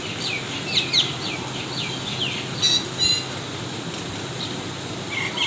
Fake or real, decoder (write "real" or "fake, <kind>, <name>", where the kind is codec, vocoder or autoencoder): real